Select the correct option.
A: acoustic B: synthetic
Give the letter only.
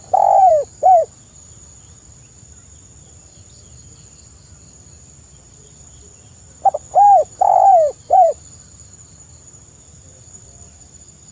B